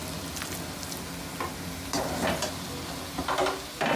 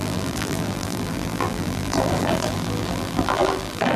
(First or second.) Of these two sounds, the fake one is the second